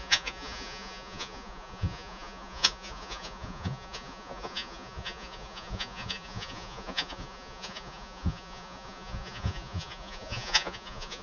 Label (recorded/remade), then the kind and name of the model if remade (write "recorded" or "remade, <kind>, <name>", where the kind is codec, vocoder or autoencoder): remade, vocoder, Vocos